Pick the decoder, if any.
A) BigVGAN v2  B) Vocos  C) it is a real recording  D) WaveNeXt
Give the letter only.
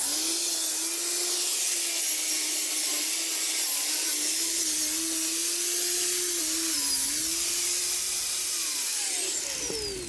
C